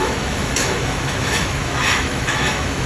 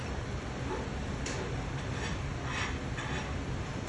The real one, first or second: second